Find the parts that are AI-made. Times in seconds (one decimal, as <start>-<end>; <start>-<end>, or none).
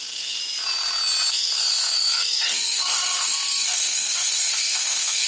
0.0-0.4; 1.3-5.3